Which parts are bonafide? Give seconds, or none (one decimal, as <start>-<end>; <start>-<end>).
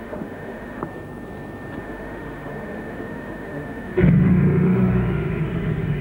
0.8-1.8